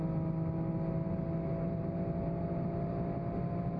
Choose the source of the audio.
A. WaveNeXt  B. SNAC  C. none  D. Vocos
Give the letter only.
C